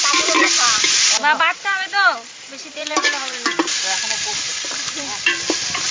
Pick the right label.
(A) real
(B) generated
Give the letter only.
B